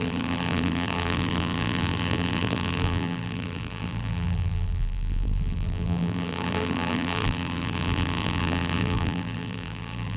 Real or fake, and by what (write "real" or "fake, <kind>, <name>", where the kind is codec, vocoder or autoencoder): fake, vocoder, BigVGAN v2